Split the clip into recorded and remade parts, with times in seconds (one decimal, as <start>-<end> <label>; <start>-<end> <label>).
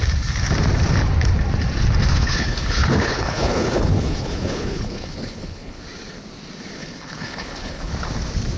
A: 0.0-2.1 recorded; 2.1-5.8 remade; 5.8-6.8 recorded; 6.8-7.9 remade; 7.9-8.6 recorded